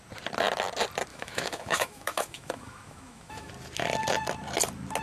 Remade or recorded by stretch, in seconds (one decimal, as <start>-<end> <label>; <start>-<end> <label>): 0.0-1.1 recorded; 1.1-3.5 remade; 3.5-5.0 recorded